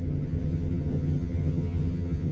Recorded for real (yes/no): no